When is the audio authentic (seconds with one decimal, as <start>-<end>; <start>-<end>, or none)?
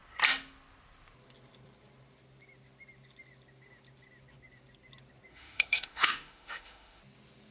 0.0-5.3; 7.0-7.5